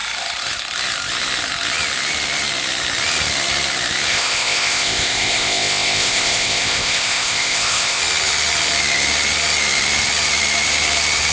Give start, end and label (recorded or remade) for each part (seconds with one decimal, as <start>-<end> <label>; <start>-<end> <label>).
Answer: 0.0-4.1 recorded; 4.1-8.0 remade; 8.0-11.3 recorded